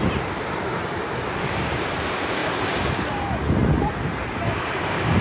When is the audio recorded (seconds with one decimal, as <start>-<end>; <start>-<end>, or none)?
2.4-3.8